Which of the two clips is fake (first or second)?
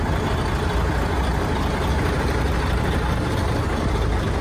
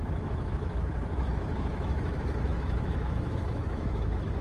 second